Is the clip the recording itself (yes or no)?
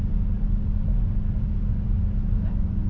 yes